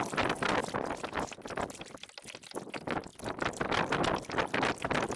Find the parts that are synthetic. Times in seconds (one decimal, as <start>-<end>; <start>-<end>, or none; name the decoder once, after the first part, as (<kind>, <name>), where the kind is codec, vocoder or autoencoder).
none